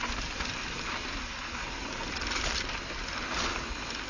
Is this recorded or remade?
recorded